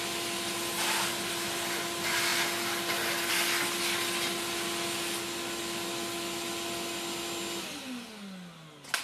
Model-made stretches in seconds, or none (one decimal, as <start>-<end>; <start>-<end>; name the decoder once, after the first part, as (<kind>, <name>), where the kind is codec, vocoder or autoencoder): none